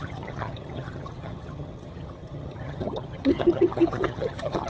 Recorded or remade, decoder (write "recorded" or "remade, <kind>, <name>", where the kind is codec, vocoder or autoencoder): remade, vocoder, HiFi-GAN